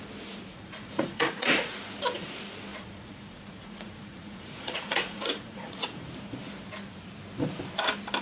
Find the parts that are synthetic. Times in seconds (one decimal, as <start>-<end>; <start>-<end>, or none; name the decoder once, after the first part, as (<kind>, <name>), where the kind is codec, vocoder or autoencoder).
0.5-1.7 (vocoder, Vocos); 2.7-6.1